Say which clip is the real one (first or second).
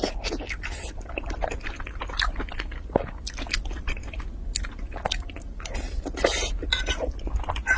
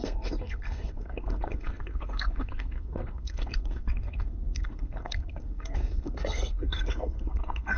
first